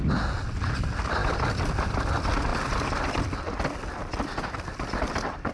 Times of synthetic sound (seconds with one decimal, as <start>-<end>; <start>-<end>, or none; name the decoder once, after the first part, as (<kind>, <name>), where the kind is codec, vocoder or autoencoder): 2.5-3.2 (vocoder, BigVGAN v2)